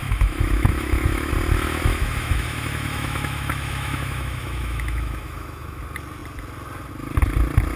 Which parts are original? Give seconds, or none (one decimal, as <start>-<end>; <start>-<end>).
1.3-1.8; 5.8-7.8